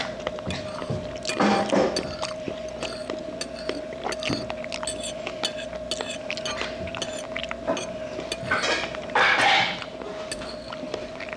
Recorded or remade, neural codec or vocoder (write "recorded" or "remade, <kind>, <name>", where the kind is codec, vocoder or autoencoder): recorded